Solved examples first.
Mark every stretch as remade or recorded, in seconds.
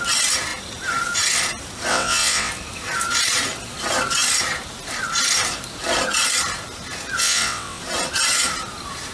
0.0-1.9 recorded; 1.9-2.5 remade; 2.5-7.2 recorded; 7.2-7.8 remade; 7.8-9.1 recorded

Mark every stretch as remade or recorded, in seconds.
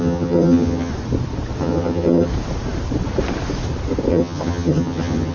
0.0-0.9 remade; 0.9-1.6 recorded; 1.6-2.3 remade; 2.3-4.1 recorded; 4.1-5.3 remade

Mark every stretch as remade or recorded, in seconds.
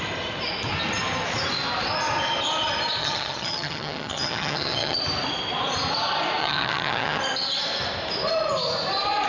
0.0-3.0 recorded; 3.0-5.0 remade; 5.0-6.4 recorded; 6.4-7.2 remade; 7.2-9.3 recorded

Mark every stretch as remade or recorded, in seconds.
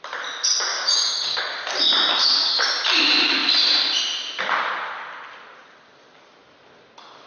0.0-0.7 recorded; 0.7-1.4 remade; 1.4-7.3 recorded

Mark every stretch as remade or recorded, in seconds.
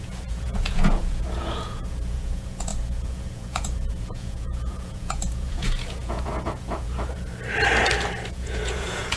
0.0-7.3 remade; 7.3-8.3 recorded; 8.3-9.2 remade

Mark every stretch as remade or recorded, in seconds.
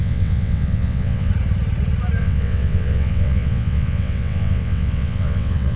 0.0-1.3 remade; 1.3-2.2 recorded; 2.2-5.8 remade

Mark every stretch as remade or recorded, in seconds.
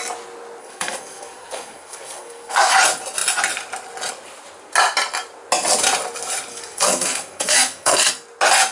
0.0-0.6 recorded; 0.6-2.7 remade; 2.7-6.5 recorded; 6.5-8.1 remade; 8.1-8.7 recorded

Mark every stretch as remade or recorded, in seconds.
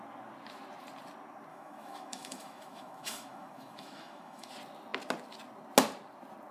0.0-1.5 recorded; 1.5-4.5 remade; 4.5-6.5 recorded